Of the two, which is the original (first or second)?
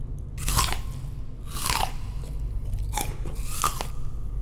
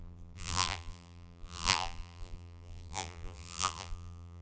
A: first